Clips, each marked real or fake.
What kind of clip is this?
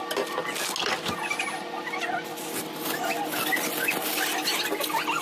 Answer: real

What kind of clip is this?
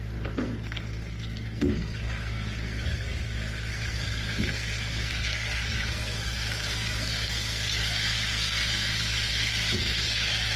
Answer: fake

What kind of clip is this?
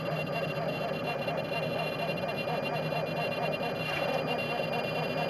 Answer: real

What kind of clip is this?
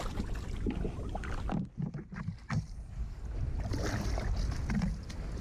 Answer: real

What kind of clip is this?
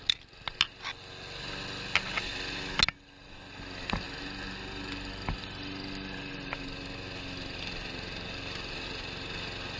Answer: real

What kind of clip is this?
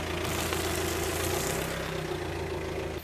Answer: real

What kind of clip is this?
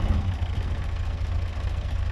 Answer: fake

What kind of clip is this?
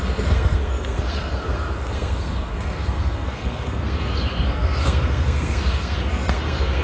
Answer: fake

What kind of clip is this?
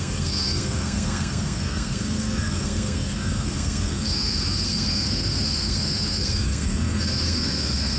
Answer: fake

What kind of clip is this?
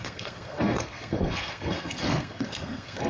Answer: fake